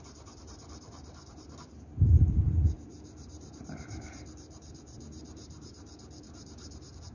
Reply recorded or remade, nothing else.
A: remade